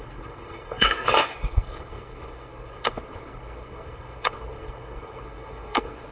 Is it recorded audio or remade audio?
remade